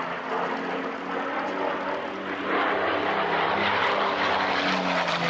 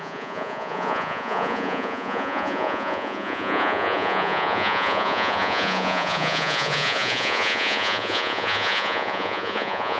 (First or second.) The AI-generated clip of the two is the second